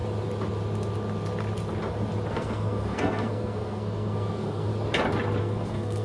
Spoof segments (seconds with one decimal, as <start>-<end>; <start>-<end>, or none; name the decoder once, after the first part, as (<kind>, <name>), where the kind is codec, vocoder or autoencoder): 2.3-4.7 (codec, SNAC); 5.4-6.0